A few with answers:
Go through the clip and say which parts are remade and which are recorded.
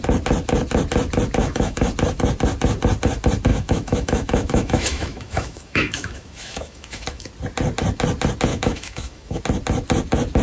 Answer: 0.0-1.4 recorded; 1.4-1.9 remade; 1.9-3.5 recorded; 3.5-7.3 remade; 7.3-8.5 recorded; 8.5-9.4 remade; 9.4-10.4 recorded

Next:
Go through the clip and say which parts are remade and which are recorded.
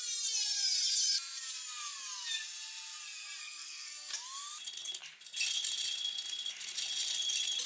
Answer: 0.0-3.4 recorded; 3.4-4.1 remade; 4.1-7.7 recorded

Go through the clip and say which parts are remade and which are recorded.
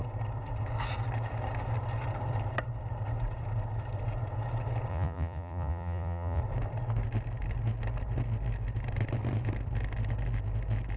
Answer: 0.0-4.9 recorded; 4.9-6.4 remade; 6.4-11.0 recorded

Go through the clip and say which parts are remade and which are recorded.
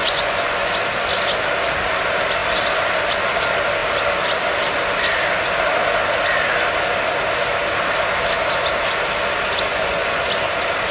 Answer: 0.0-0.7 remade; 0.7-9.7 recorded; 9.7-10.2 remade; 10.2-10.9 recorded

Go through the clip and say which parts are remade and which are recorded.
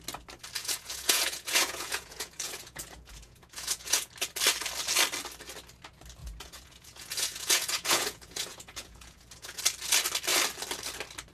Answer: 0.0-0.6 recorded; 0.6-4.1 remade; 4.1-6.2 recorded; 6.2-9.6 remade; 9.6-11.3 recorded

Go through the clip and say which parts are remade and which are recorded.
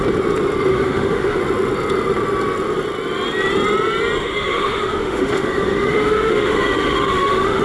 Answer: 0.0-0.7 recorded; 0.7-1.4 remade; 1.4-4.2 recorded; 4.2-7.6 remade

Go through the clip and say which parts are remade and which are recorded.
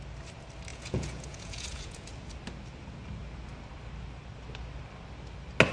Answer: 0.0-0.7 recorded; 0.7-2.1 remade; 2.1-5.7 recorded